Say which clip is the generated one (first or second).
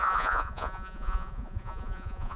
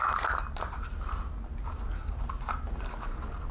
first